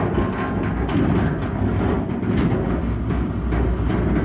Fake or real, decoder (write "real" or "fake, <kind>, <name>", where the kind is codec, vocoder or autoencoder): real